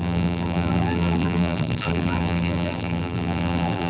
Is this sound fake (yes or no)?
yes